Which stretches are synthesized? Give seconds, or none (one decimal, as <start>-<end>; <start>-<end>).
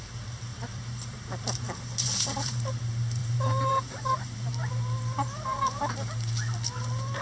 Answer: 0.5-2.8; 3.2-4.7